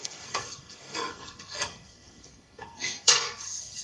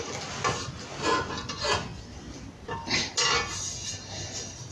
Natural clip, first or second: second